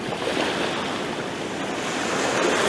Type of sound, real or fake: real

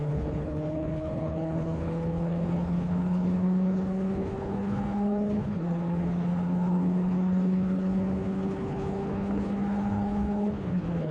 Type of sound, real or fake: fake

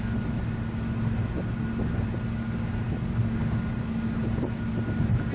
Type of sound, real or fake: real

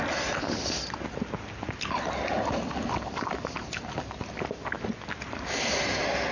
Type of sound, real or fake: real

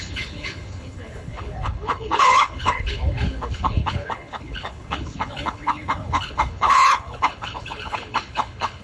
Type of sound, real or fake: fake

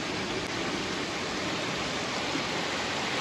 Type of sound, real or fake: real